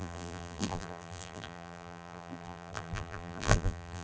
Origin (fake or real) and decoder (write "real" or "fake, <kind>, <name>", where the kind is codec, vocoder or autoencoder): fake, vocoder, BigVGAN v2